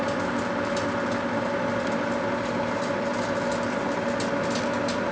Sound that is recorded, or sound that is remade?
recorded